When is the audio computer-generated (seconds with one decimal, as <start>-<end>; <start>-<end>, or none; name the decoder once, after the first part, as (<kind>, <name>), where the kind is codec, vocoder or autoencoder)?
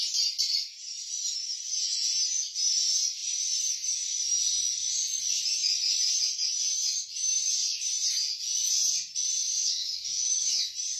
9.6-10.6 (autoencoder, DAC-VAE)